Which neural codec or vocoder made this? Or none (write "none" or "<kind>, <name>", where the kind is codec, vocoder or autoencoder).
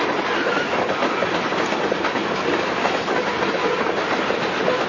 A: none